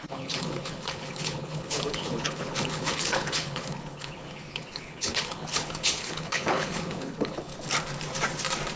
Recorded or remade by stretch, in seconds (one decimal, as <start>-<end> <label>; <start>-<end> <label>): 0.0-7.5 remade; 7.5-8.8 recorded